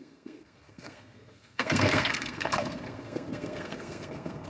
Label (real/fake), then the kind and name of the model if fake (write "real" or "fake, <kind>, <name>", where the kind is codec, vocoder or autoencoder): fake, codec, SNAC